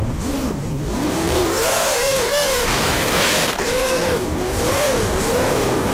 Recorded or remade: remade